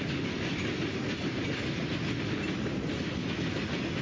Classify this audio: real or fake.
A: real